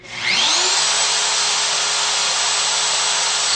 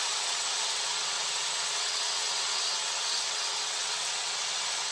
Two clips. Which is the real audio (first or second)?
first